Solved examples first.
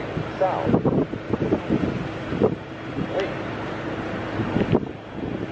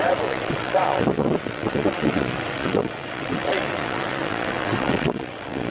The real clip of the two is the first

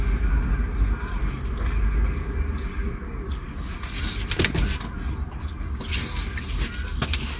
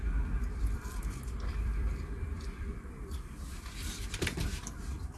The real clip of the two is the first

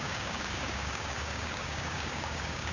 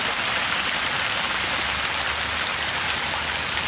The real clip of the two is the second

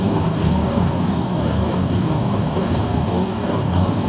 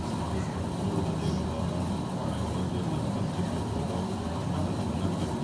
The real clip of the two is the second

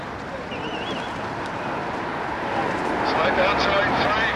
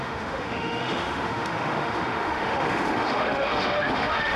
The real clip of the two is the first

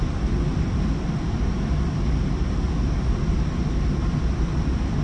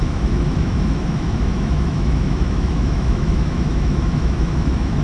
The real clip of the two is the first